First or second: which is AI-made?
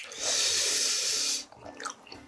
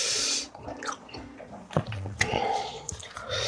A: second